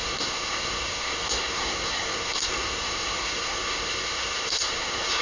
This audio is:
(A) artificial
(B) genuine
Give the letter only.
A